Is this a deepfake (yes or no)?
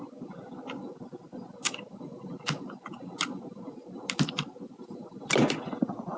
no